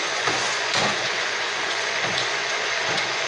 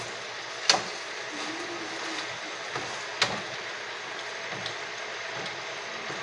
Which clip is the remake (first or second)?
first